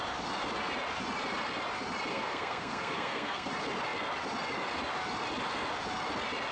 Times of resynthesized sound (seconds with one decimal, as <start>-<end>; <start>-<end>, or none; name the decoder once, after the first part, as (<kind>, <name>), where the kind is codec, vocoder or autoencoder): 2.1-3.5 (codec, SNAC)